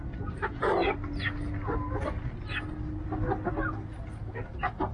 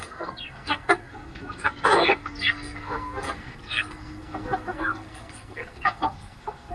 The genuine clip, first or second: first